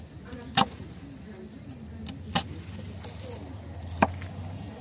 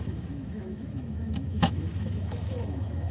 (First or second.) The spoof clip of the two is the second